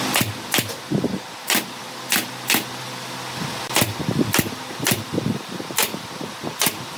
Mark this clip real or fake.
real